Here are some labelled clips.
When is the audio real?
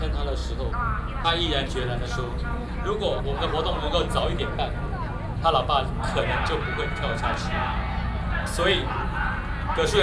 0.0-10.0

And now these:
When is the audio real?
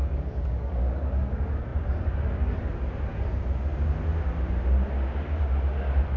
1.2-6.2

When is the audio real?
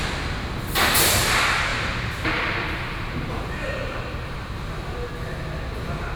0.0-1.7; 5.1-6.2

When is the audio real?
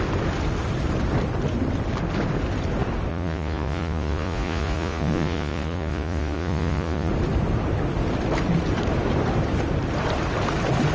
0.0-3.1; 7.1-10.9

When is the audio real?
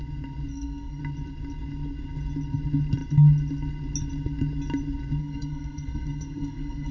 0.0-0.5; 1.0-5.2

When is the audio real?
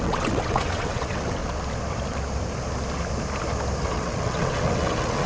1.4-3.8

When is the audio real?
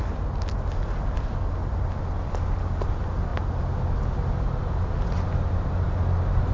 0.0-6.5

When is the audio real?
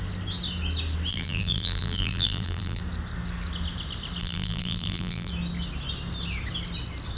0.0-1.1; 2.8-4.2; 5.3-7.2